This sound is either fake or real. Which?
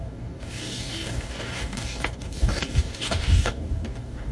fake